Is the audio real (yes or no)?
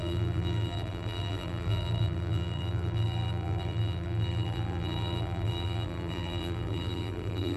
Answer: no